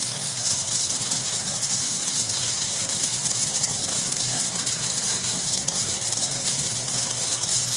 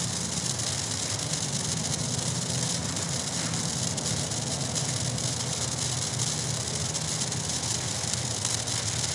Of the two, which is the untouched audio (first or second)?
second